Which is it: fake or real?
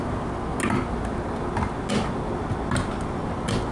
real